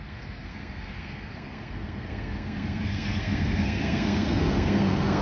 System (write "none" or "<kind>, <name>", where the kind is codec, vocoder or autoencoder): codec, SNAC